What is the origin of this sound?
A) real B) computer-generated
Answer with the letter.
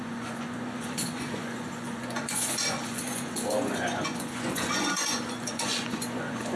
B